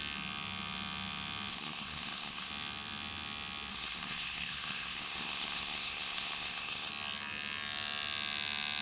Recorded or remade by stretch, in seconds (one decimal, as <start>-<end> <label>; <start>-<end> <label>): 0.0-1.5 recorded; 1.5-2.5 remade; 2.5-3.7 recorded; 3.7-6.9 remade; 6.9-8.8 recorded